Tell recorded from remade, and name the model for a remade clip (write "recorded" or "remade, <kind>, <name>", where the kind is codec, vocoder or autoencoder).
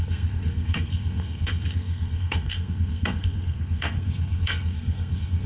remade, codec, SNAC